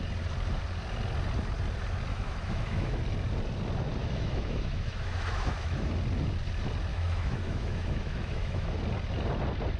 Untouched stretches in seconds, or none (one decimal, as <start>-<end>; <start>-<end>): 0.0-2.1; 3.0-4.0; 5.9-6.9; 8.8-9.8

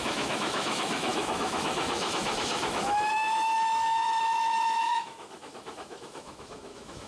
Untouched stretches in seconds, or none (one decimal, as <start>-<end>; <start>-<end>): none

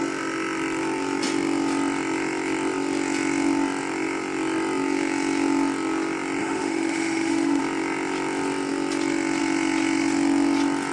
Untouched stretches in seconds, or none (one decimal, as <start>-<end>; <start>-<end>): 0.0-6.4; 7.6-10.9

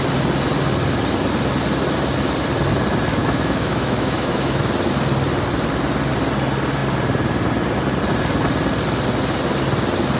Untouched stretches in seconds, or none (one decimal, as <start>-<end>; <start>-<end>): 0.0-3.2; 4.6-10.2

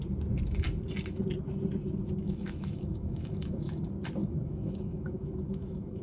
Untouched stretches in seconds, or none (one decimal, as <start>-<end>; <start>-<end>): 0.0-2.2; 3.8-4.2

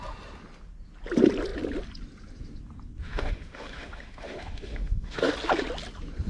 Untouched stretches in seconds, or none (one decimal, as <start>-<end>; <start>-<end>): 0.0-3.0; 5.3-6.3

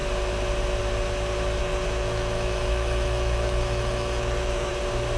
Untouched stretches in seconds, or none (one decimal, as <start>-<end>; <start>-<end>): 0.0-1.6; 4.7-5.2